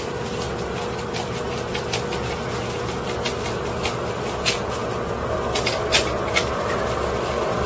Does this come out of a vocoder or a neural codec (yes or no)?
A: no